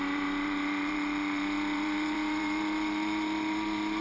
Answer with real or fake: fake